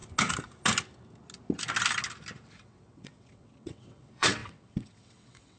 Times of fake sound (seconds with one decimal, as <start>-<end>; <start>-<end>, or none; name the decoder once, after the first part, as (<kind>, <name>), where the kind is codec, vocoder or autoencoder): 2.5-5.6 (vocoder, WaveNeXt)